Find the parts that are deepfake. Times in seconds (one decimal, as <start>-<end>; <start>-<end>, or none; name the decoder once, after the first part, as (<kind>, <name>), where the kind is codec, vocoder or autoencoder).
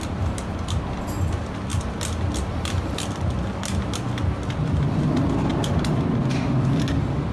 none